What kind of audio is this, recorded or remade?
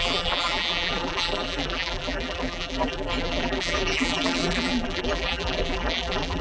remade